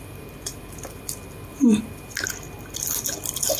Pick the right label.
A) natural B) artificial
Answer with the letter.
A